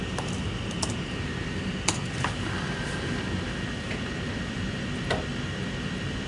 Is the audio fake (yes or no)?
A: yes